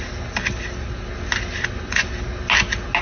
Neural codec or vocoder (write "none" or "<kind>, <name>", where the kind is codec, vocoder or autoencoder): none